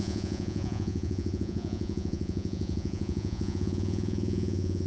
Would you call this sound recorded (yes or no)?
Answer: no